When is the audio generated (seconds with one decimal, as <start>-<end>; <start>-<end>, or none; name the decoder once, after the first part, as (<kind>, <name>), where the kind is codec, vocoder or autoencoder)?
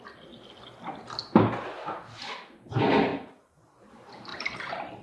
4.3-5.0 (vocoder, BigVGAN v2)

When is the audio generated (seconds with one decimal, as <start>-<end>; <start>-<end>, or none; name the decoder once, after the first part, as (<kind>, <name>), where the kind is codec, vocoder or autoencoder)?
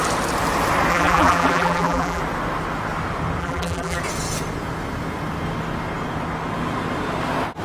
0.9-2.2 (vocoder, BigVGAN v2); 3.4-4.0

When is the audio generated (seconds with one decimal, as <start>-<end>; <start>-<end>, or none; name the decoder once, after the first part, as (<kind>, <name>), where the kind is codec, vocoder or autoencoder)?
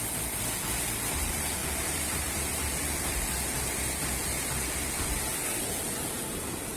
1.6-2.7 (vocoder, BigVGAN v2)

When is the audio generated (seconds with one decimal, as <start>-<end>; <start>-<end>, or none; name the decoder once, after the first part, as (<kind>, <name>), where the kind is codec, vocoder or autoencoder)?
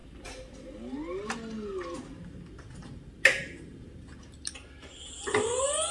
0.0-0.7 (vocoder, BigVGAN v2)